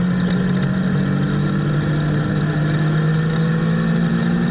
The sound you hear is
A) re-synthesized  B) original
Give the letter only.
B